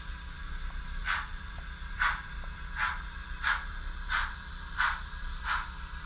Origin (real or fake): fake